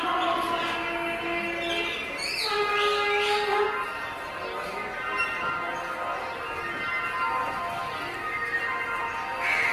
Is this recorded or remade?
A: recorded